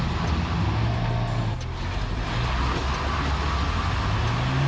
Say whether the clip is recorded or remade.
recorded